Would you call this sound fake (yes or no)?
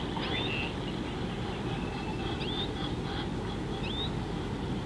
no